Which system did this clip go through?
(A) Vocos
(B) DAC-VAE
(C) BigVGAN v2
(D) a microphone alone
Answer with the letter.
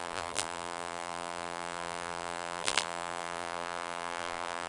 C